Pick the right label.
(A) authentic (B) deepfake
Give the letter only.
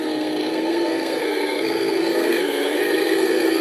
B